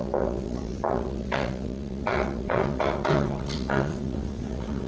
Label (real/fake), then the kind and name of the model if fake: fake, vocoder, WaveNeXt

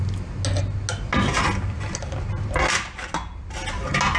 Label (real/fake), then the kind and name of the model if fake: real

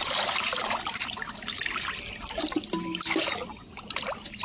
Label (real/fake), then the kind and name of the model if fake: real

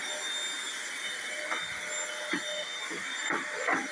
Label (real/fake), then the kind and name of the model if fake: real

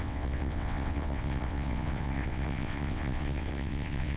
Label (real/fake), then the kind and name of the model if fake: fake, vocoder, WaveNeXt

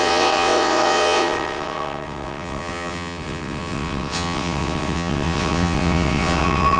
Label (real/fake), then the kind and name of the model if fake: fake, vocoder, WaveNeXt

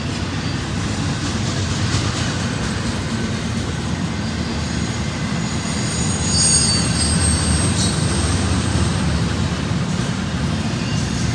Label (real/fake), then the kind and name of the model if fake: real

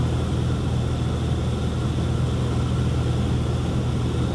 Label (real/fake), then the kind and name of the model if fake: real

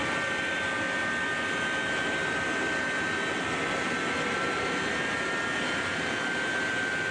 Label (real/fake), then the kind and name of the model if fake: real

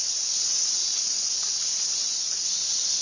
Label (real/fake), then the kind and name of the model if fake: fake, vocoder, WaveNeXt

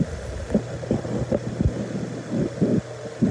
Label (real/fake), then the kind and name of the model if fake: real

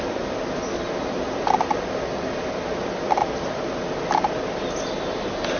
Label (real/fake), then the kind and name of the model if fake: real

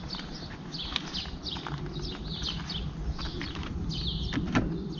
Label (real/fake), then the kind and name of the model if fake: real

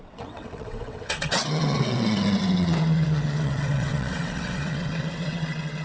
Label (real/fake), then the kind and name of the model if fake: fake, vocoder, WaveNeXt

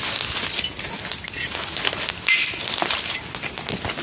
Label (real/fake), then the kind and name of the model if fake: real